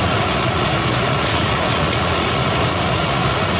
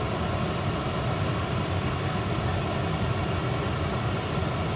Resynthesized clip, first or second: first